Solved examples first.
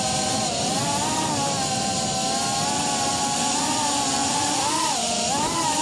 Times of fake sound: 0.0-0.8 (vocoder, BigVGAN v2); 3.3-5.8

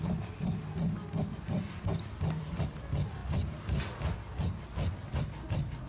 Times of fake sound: 1.9-2.8 (vocoder, BigVGAN v2)

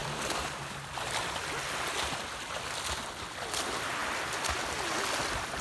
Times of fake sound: 0.0-1.4 (vocoder, BigVGAN v2); 4.0-4.6

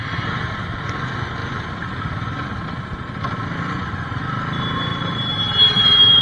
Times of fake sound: 4.9-6.2 (vocoder, BigVGAN v2)